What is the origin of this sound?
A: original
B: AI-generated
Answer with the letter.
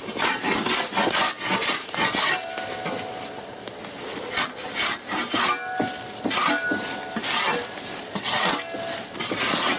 A